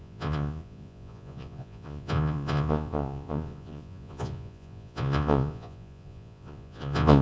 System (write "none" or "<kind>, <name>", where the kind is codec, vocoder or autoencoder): vocoder, Vocos